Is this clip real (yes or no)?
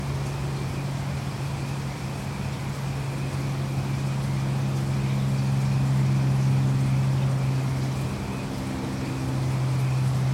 yes